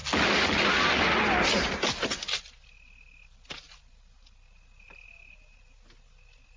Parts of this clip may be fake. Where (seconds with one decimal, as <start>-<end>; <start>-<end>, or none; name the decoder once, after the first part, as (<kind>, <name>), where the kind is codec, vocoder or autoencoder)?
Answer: none